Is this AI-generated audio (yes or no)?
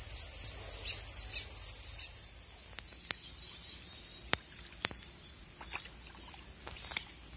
no